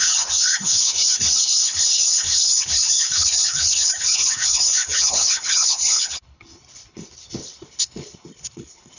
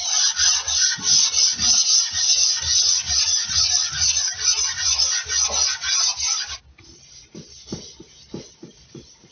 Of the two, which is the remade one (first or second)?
first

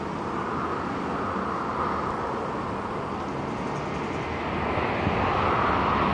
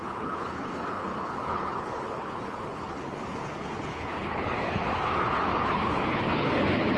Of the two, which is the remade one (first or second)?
second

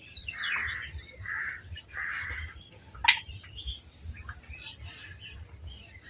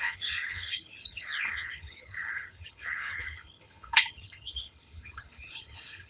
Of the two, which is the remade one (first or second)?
second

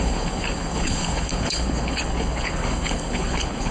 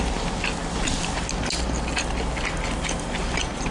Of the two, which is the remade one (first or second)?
first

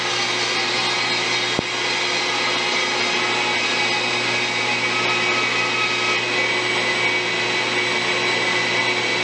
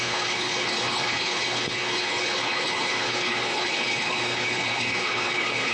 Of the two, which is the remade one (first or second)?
second